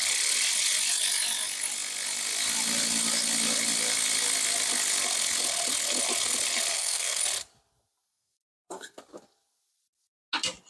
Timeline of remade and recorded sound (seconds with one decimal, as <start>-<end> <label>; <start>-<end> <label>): 0.0-6.7 recorded; 6.7-7.2 remade; 7.2-8.1 recorded; 8.1-9.0 remade; 9.0-10.7 recorded